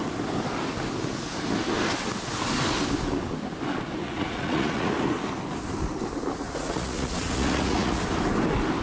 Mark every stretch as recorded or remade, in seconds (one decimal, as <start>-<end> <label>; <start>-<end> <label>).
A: 0.0-4.0 recorded; 4.0-4.9 remade; 4.9-6.4 recorded; 6.4-8.0 remade; 8.0-8.8 recorded